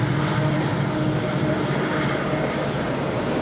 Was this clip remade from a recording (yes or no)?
yes